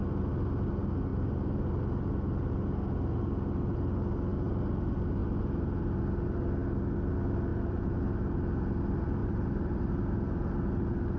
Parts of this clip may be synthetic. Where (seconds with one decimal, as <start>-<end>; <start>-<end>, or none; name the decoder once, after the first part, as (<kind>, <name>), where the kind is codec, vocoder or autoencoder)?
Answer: 1.1-1.6 (vocoder, BigVGAN v2); 7.5-8.2; 9.2-10.0